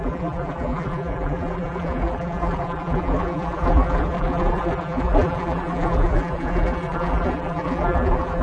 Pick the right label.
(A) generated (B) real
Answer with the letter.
A